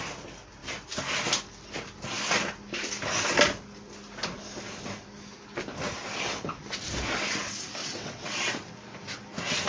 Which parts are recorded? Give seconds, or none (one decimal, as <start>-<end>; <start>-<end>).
0.0-7.8; 8.4-9.7